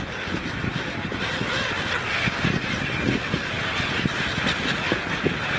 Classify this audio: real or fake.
real